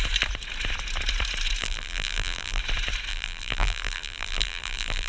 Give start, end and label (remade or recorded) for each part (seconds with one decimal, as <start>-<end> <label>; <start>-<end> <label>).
0.0-1.6 recorded; 1.6-2.6 remade; 2.6-3.1 recorded; 3.1-5.1 remade